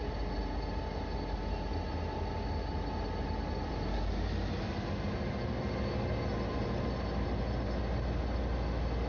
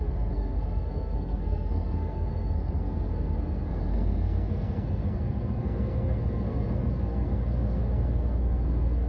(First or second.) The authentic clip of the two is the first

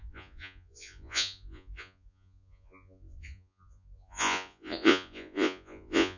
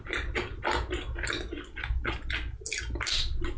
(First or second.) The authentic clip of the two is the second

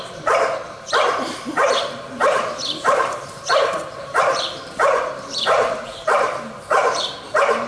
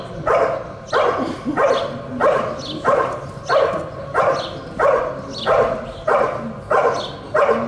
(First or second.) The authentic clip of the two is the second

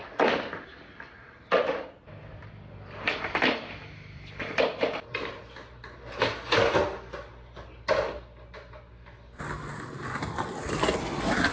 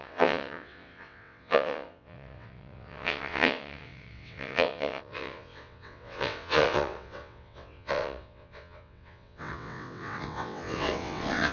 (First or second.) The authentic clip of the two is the first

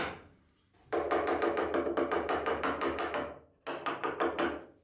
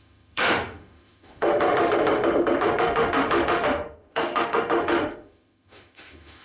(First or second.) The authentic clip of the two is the first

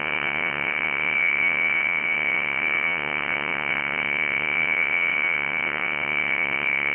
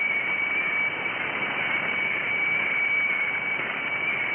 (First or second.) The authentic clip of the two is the second